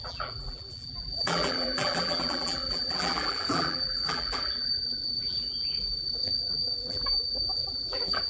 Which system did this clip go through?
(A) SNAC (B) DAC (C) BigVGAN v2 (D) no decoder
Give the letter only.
C